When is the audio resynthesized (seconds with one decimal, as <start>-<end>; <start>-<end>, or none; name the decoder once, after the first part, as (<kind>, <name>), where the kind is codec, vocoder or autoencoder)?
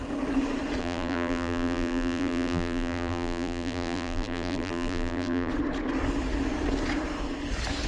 0.8-5.5 (vocoder, BigVGAN v2)